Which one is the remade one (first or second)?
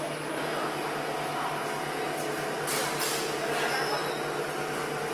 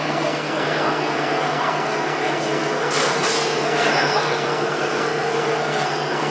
second